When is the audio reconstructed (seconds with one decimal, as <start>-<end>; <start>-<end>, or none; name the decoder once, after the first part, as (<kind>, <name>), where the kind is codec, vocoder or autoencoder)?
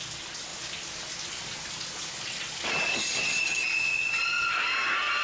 none